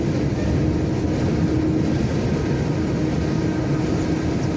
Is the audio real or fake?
real